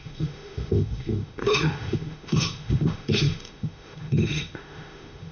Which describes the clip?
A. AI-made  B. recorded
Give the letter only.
A